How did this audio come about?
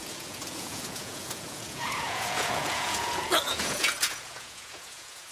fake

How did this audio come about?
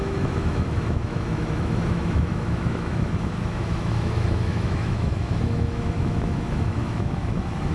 fake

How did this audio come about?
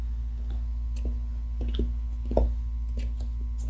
real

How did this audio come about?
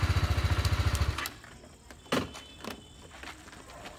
real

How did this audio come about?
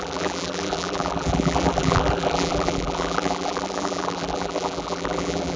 fake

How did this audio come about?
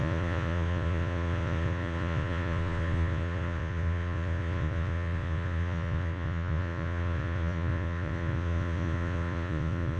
fake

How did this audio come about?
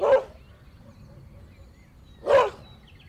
real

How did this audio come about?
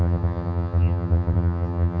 fake